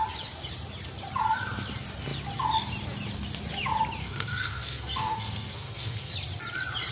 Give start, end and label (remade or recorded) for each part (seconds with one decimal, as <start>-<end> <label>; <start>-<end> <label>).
0.0-4.0 recorded; 4.0-6.1 remade; 6.1-6.9 recorded